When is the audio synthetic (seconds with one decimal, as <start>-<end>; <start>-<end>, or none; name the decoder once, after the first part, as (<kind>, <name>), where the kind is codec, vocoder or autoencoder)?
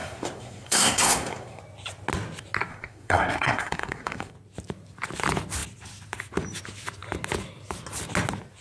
0.0-1.6 (codec, SNAC); 2.7-4.3